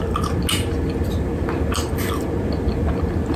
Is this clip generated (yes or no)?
no